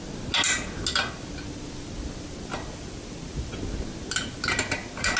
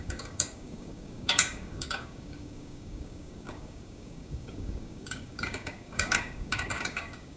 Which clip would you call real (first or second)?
first